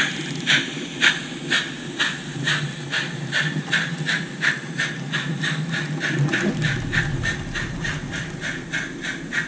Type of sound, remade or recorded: recorded